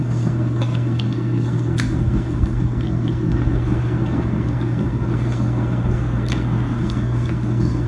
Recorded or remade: remade